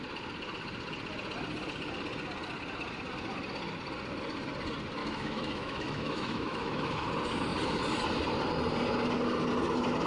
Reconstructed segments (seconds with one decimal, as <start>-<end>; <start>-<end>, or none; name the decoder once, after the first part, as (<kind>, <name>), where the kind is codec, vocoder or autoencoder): 5.0-7.1 (autoencoder, DAC-VAE)